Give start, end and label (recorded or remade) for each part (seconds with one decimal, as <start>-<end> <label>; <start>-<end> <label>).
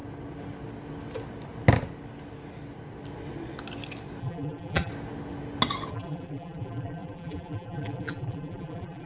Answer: 0.0-4.2 recorded; 4.2-4.9 remade; 4.9-5.9 recorded; 5.9-9.1 remade